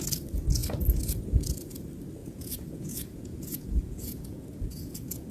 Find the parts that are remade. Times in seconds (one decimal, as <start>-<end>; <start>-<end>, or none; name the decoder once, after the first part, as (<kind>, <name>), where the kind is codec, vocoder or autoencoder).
2.2-5.3 (vocoder, Vocos)